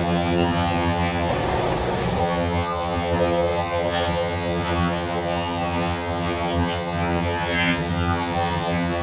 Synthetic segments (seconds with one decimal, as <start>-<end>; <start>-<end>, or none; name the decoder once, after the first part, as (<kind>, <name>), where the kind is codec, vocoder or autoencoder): 0.0-1.3 (vocoder, HiFi-GAN); 2.2-9.0